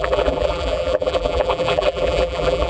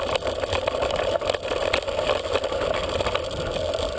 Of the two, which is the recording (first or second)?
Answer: second